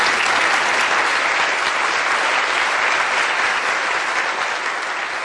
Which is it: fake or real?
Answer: real